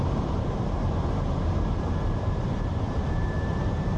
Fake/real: fake